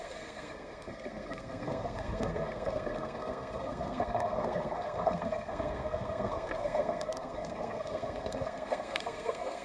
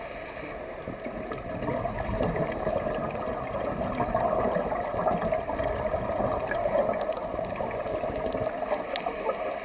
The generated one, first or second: first